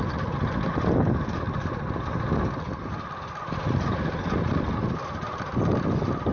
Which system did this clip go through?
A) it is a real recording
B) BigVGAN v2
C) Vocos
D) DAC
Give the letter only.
A